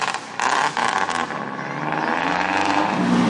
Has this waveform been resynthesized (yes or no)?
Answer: no